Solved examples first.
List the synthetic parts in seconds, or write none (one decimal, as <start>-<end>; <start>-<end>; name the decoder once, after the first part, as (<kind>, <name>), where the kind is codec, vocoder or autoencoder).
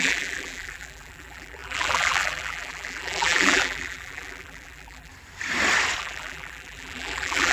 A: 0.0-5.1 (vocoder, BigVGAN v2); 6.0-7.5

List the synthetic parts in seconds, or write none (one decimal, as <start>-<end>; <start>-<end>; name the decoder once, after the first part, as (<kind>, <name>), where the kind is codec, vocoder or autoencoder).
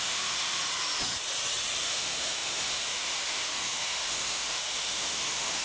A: 0.0-0.6 (autoencoder, DAC-VAE); 1.8-5.6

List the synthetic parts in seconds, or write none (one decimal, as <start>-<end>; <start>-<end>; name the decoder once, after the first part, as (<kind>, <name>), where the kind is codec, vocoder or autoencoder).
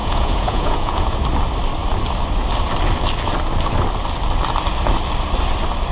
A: 0.0-1.2 (vocoder, Vocos)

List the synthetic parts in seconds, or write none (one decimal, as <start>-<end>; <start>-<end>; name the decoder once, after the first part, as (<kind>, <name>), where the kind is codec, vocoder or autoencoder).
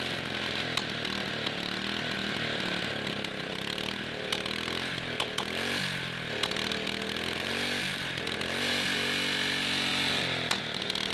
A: 2.2-2.9 (vocoder, BigVGAN v2); 7.9-8.7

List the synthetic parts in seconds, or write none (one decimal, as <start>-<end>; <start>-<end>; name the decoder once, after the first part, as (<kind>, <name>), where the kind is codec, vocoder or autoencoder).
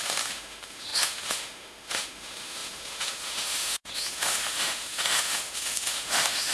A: 0.0-6.5 (autoencoder, DAC-VAE)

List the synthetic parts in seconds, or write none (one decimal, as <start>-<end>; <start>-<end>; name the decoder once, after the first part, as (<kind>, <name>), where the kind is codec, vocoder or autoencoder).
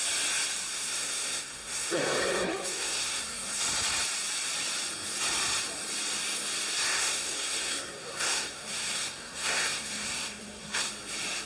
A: 0.7-3.6 (codec, SNAC); 6.9-10.9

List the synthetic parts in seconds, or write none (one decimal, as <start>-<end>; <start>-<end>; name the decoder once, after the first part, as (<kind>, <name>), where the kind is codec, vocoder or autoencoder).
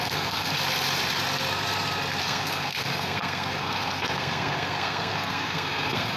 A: 0.0-0.5 (codec, SNAC); 2.2-6.2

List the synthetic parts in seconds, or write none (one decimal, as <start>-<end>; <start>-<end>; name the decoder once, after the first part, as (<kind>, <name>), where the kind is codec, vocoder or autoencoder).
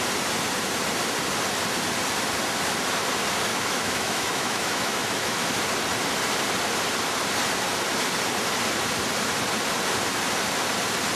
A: 3.5-5.4 (autoencoder, DAC-VAE)